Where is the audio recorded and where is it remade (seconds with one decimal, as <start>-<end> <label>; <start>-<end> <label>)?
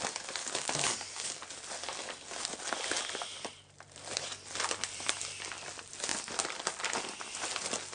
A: 0.0-0.4 recorded; 0.4-1.4 remade; 1.4-7.9 recorded